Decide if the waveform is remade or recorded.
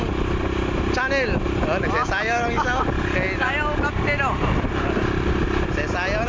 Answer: recorded